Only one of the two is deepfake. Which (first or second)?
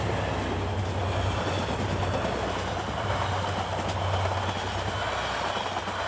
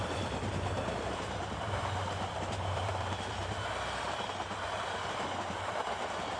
second